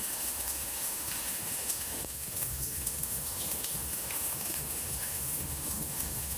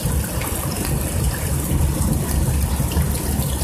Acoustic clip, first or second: second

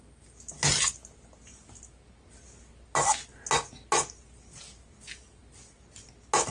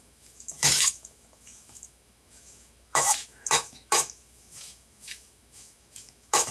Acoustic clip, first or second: first